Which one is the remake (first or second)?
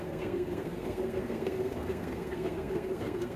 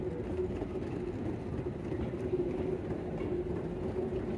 first